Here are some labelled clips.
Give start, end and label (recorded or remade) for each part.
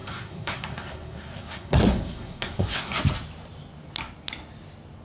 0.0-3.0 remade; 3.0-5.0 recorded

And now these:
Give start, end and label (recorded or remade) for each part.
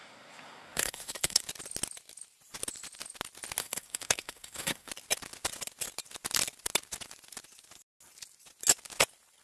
0.0-1.4 remade; 1.4-3.6 recorded; 3.6-4.9 remade; 4.9-9.4 recorded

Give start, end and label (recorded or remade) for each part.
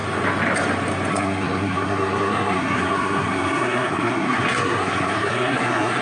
0.0-1.1 recorded; 1.1-6.0 remade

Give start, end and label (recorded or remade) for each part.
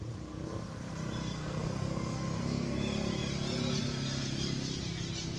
0.0-1.2 recorded; 1.2-2.8 remade; 2.8-5.4 recorded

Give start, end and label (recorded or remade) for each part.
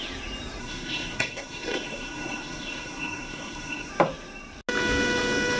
0.0-0.6 recorded; 0.6-3.9 remade; 3.9-5.6 recorded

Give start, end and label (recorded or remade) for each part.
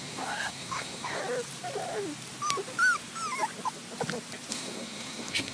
0.0-1.2 remade; 1.2-4.5 recorded; 4.5-5.5 remade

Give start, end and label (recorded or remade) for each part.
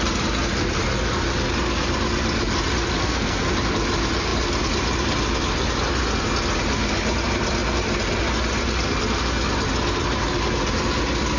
0.0-3.0 recorded; 3.0-3.5 remade; 3.5-11.4 recorded